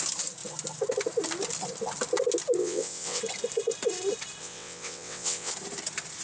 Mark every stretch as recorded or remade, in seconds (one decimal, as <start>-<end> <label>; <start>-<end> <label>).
0.0-2.6 recorded; 2.6-3.2 remade; 3.2-4.4 recorded; 4.4-5.5 remade; 5.5-6.2 recorded